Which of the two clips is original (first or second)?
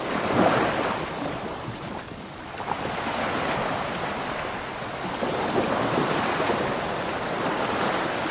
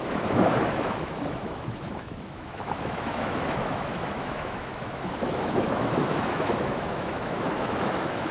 first